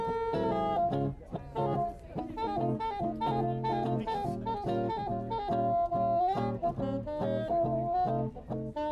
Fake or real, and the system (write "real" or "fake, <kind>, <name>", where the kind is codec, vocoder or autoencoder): real